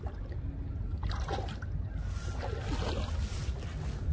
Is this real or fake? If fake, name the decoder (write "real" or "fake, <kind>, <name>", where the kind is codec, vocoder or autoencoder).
real